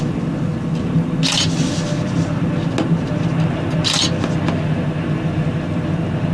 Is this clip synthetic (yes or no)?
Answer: no